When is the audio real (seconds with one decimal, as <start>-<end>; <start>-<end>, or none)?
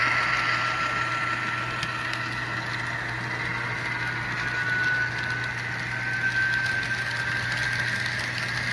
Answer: 0.0-8.7